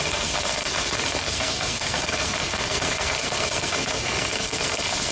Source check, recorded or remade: remade